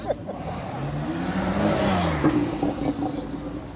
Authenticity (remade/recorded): recorded